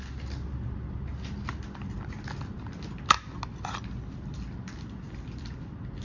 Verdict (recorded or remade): recorded